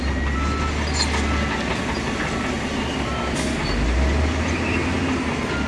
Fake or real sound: real